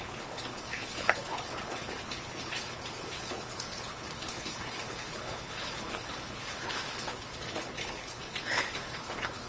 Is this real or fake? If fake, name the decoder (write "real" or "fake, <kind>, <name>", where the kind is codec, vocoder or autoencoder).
fake, codec, HILCodec